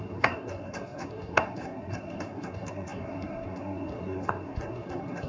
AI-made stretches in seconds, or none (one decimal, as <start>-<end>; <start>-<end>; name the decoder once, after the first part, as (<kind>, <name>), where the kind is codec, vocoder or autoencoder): 0.0-5.3 (codec, SNAC)